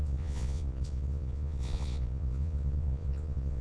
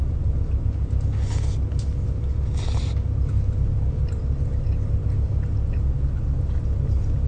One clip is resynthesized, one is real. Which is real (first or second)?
second